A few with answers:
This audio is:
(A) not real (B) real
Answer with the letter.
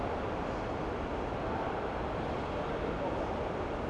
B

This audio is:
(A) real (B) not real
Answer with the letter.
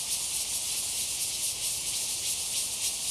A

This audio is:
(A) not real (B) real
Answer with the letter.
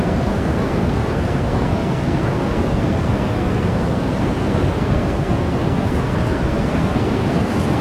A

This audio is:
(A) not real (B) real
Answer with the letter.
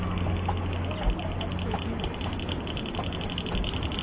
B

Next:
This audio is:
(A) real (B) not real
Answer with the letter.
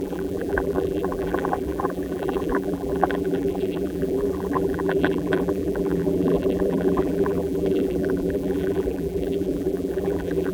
B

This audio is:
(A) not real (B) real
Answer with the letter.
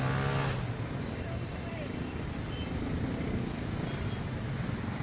B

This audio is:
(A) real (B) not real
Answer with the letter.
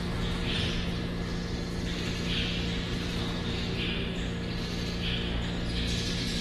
A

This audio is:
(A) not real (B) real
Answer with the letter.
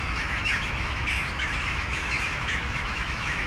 A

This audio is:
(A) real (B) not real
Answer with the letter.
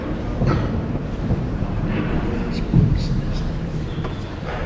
A